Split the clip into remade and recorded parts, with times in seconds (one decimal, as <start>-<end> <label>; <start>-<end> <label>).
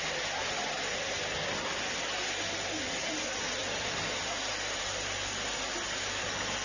0.0-3.6 recorded; 3.6-4.5 remade; 4.5-6.6 recorded